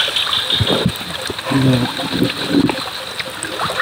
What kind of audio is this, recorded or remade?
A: recorded